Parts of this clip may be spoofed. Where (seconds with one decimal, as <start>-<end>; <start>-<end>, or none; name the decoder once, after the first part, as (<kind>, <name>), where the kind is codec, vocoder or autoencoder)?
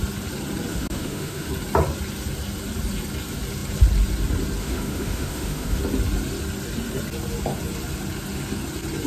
0.7-1.5 (autoencoder, DAC-VAE); 4.6-5.8